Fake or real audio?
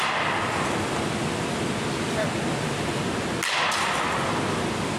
real